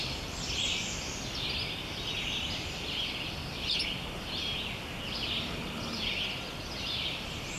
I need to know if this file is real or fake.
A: real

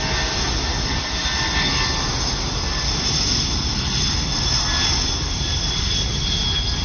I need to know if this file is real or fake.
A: real